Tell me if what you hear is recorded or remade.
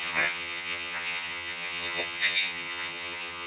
remade